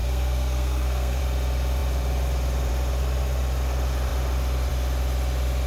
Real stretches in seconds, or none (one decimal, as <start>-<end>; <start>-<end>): 1.2-5.7